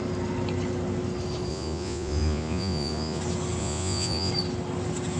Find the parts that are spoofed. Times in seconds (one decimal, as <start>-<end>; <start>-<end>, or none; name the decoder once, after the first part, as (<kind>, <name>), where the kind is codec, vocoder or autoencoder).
1.5-3.2 (vocoder, Vocos); 3.6-4.3